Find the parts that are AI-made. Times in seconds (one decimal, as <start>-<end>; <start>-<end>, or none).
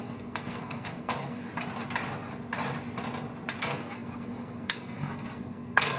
0.0-1.5; 3.6-6.0